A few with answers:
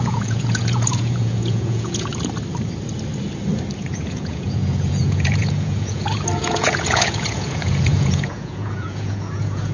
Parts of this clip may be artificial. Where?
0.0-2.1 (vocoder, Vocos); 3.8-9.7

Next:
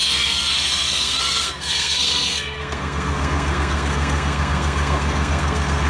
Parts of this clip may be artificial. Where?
0.0-5.9 (codec, SNAC)

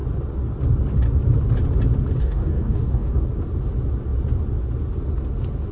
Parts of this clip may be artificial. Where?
2.2-3.2 (codec, DAC)

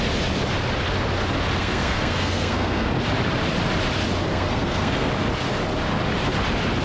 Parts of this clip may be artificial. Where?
1.6-2.9 (codec, SNAC); 4.3-5.1

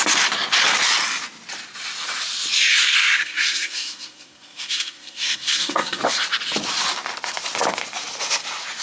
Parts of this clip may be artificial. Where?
2.7-6.0 (codec, SNAC)

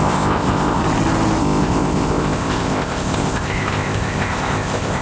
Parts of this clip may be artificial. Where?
0.0-0.8 (codec, ZipCodec); 1.4-5.0